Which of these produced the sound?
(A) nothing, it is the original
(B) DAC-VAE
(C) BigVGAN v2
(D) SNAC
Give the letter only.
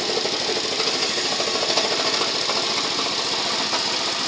A